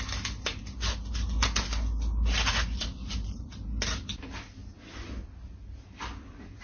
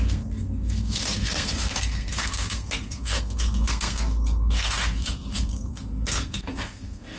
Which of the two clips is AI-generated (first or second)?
second